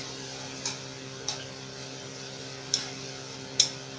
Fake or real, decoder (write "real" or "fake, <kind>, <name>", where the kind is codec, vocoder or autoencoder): real